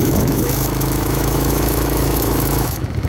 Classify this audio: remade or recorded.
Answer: remade